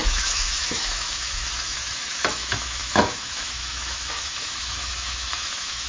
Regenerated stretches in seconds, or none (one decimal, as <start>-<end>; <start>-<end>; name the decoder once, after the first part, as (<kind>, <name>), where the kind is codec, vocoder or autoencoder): 0.0-5.9 (autoencoder, DAC-VAE)